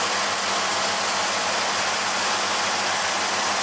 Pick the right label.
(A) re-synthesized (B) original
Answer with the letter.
B